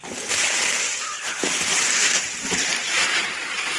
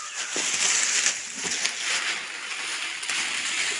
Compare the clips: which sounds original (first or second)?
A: second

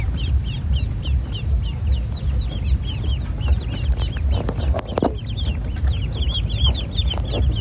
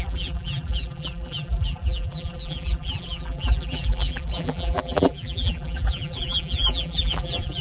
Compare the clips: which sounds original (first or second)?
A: first